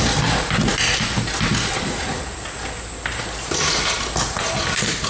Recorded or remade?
recorded